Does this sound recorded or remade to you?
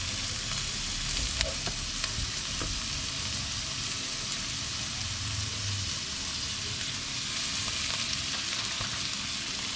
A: recorded